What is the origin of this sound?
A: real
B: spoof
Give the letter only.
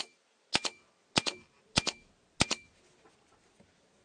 A